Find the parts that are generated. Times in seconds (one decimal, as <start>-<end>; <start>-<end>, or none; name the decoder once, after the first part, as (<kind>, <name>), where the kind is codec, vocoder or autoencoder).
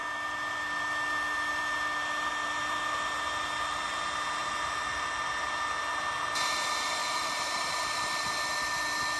7.0-8.4 (vocoder, BigVGAN v2)